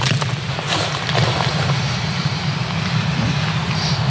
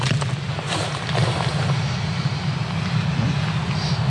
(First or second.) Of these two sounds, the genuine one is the second